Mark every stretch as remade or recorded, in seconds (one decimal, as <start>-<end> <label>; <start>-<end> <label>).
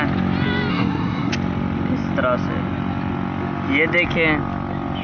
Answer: 0.0-0.7 recorded; 0.7-1.3 remade; 1.3-5.0 recorded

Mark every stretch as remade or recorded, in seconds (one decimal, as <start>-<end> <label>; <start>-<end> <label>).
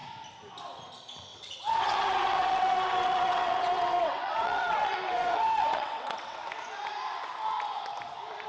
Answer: 0.0-1.3 recorded; 1.3-6.4 remade; 6.4-8.5 recorded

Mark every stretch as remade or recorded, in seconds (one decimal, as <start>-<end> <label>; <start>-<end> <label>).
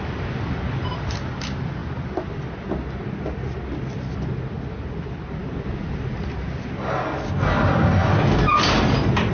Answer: 0.0-9.3 recorded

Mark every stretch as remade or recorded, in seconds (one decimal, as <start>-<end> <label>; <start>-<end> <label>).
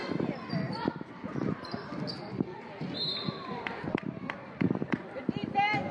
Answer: 0.0-3.5 recorded; 3.5-5.9 remade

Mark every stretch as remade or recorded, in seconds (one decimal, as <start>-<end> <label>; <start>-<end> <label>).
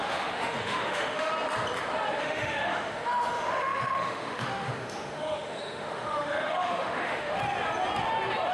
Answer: 0.0-1.3 remade; 1.3-2.2 recorded; 2.2-7.4 remade; 7.4-8.5 recorded